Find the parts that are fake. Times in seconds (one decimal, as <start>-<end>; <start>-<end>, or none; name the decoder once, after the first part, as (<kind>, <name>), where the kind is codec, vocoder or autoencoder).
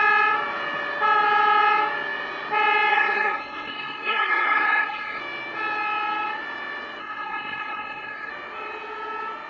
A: 2.9-5.2 (codec, SNAC); 7.0-8.3